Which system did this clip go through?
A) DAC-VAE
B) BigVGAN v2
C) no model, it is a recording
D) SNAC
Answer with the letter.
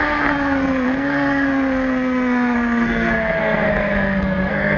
D